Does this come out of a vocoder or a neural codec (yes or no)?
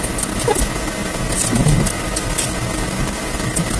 no